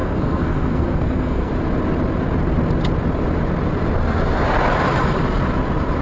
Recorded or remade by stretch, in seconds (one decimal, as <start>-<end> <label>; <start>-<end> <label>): 0.0-1.5 remade; 1.5-6.0 recorded